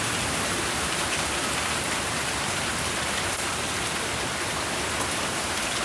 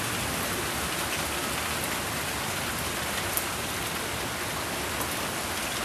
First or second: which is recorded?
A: second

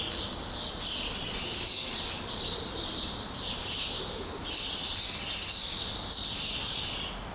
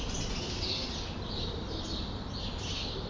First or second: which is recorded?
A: second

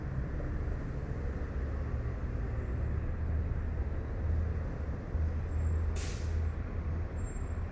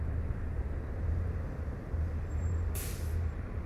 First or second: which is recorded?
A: first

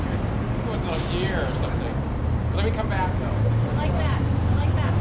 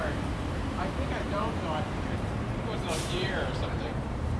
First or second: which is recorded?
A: first